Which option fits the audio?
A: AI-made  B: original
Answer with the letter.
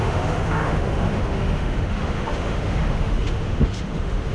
A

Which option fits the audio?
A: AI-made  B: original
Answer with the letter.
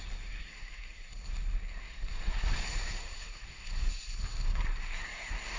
A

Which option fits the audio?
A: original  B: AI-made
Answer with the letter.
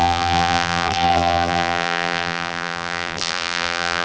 B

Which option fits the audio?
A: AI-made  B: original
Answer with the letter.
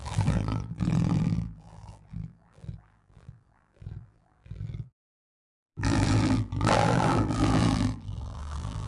A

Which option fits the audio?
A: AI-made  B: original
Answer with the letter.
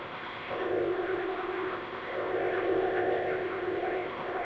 A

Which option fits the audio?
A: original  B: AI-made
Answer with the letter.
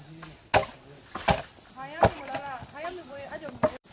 A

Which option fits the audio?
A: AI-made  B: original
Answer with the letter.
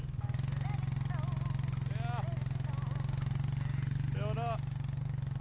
B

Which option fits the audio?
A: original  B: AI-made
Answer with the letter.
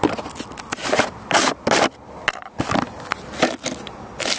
A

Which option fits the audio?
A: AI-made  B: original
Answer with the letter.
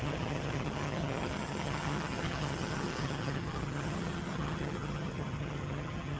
A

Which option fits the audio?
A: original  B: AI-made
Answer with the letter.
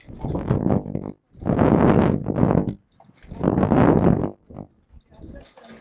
A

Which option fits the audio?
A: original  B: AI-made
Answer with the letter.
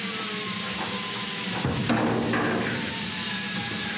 A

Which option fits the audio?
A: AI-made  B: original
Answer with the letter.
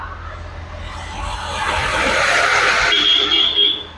B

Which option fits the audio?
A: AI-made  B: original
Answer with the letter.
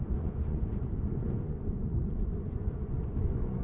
A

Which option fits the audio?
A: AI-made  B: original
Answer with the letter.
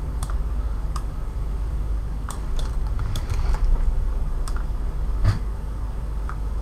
A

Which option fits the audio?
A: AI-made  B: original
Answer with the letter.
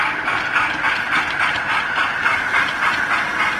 B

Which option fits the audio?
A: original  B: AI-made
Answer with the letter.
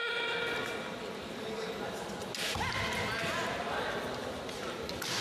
A